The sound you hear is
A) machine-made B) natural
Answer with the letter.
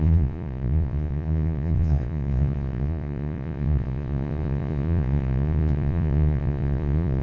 A